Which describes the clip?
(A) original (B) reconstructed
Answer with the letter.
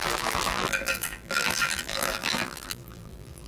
B